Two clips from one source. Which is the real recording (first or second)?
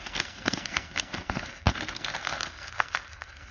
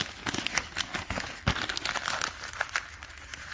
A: second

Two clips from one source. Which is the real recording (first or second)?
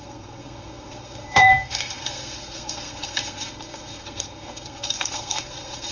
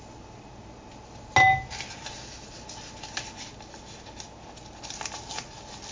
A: second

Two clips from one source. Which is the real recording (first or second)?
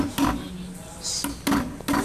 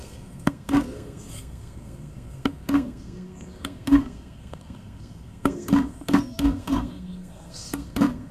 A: first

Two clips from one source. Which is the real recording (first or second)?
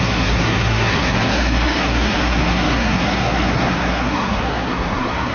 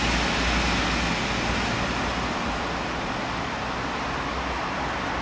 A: second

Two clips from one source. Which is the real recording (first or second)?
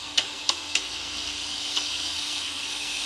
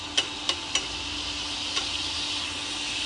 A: second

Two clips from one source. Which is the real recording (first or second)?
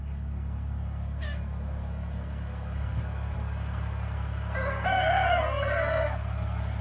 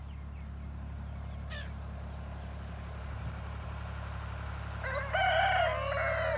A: second